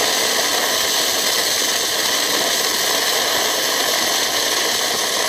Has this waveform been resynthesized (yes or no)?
no